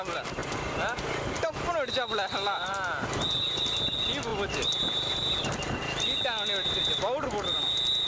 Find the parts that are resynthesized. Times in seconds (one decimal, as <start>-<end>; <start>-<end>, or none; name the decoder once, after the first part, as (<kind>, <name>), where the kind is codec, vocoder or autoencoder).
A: none